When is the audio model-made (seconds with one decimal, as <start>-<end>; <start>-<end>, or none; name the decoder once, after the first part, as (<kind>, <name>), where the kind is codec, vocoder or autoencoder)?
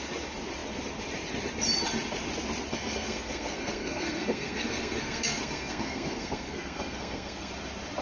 2.7-7.5 (codec, SNAC)